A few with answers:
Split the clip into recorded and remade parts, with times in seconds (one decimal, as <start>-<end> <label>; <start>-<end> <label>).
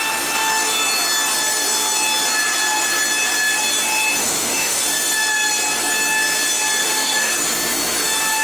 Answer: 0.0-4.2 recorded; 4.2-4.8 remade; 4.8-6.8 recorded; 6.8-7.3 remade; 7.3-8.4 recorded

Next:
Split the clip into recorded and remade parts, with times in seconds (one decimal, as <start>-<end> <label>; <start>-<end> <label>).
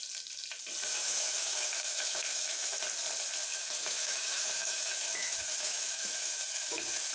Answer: 0.0-0.9 recorded; 0.9-2.8 remade; 2.8-3.5 recorded; 3.5-7.1 remade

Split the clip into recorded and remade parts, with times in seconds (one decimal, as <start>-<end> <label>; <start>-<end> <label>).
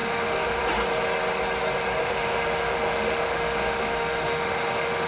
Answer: 0.0-0.6 remade; 0.6-2.0 recorded; 2.0-5.1 remade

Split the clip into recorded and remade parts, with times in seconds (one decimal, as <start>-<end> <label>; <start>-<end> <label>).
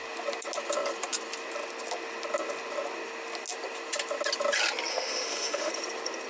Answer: 0.0-4.9 recorded; 4.9-5.7 remade; 5.7-6.3 recorded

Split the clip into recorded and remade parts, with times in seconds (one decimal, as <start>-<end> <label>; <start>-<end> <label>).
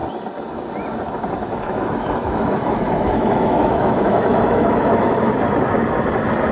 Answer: 0.0-1.4 recorded; 1.4-5.3 remade; 5.3-6.5 recorded